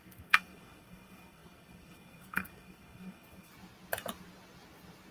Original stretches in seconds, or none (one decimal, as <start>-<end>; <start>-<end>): 3.5-5.1